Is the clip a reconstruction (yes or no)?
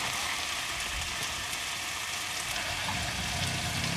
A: no